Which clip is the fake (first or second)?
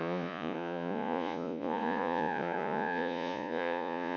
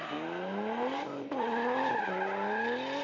first